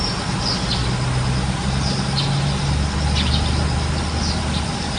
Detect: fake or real real